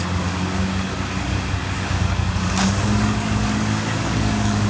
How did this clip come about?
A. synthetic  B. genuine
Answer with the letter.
A